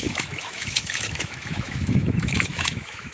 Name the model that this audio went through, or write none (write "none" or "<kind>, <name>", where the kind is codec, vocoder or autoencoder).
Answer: autoencoder, DAC-VAE